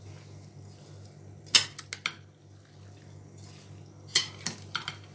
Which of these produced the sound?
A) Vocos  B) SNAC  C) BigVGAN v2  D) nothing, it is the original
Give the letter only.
D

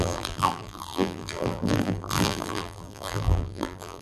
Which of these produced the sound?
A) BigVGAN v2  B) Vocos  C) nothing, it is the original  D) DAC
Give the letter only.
A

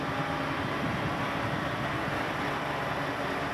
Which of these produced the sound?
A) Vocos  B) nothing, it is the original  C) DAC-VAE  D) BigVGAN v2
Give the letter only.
B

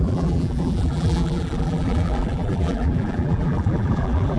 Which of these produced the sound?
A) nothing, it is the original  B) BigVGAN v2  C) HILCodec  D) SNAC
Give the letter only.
B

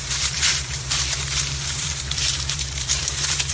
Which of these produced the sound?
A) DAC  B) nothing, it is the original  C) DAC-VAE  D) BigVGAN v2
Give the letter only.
D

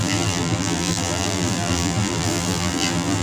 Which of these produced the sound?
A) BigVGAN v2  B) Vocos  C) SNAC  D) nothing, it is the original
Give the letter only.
A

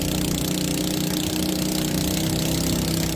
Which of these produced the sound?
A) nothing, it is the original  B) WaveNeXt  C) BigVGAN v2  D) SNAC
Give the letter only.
A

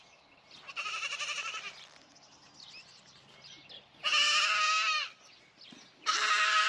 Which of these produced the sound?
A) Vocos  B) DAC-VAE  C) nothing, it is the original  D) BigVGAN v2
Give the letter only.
C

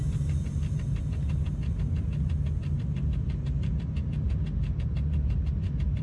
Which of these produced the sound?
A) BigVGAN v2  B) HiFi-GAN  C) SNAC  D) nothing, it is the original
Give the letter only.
D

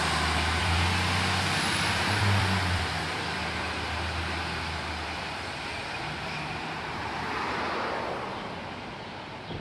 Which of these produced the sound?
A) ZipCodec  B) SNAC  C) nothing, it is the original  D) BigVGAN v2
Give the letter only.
D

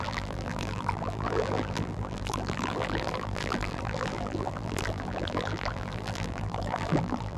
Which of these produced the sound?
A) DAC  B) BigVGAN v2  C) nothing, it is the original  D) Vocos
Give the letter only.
B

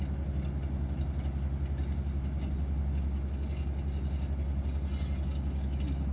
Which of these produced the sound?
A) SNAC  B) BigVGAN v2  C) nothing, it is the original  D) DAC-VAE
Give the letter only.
C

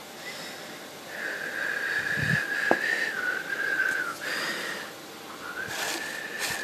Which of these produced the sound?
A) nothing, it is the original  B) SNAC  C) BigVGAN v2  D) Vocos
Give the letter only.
A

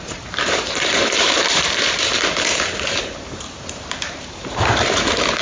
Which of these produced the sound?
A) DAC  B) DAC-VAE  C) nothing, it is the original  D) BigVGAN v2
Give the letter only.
D